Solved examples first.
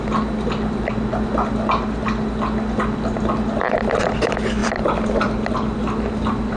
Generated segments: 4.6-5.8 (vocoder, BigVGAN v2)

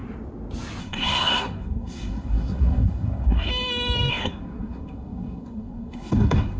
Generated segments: 0.8-3.5 (codec, SNAC); 4.1-6.6

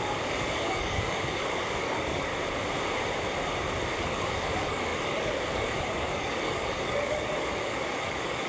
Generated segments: 0.0-2.3 (codec, DAC); 4.0-8.5

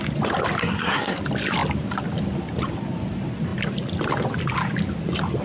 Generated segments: 0.6-1.2 (codec, SNAC)